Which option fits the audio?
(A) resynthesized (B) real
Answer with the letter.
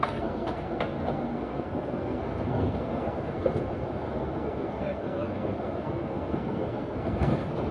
A